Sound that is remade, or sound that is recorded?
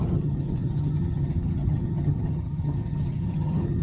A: remade